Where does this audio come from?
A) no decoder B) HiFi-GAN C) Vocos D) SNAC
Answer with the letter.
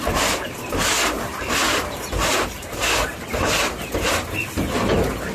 A